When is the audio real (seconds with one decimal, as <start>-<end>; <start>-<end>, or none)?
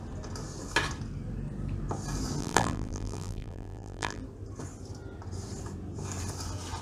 0.0-2.4; 4.2-6.8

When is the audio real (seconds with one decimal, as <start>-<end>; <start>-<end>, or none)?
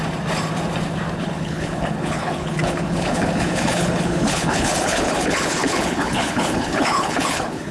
0.0-1.2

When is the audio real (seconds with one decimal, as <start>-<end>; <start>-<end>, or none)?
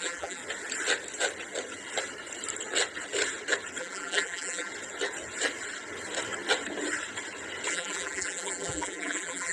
0.4-3.8; 4.7-7.7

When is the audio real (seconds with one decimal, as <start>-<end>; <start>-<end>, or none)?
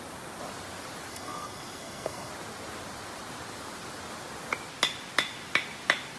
0.0-1.1; 2.3-6.2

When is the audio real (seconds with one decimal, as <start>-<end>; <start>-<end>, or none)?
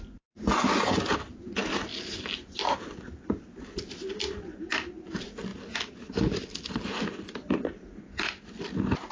0.0-9.1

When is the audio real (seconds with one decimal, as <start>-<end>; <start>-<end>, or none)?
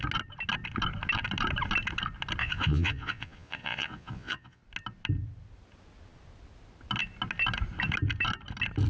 0.0-2.4; 4.6-8.9